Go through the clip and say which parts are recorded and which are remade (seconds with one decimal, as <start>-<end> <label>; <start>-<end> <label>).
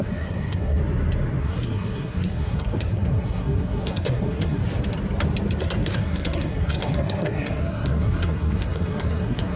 0.0-0.8 remade; 0.8-1.4 recorded; 1.4-4.6 remade; 4.6-5.6 recorded; 5.6-9.6 remade